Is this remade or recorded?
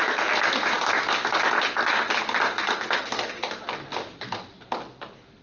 recorded